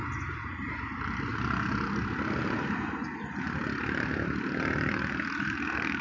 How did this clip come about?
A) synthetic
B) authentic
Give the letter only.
A